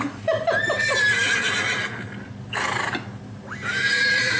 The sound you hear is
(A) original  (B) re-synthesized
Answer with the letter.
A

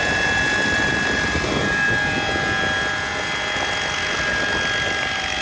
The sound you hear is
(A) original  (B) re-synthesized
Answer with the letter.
A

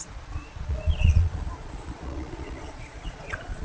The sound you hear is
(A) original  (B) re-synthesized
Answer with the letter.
B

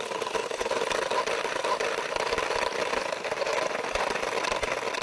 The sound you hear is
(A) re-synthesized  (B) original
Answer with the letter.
B